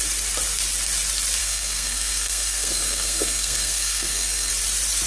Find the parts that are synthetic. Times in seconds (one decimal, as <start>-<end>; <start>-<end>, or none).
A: 1.4-4.5